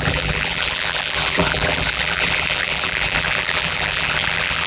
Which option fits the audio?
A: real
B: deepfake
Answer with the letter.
B